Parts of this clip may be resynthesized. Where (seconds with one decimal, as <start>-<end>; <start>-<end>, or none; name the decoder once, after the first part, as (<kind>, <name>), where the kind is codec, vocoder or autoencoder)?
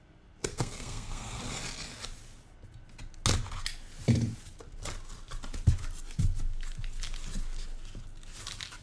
0.5-1.4 (codec, SNAC)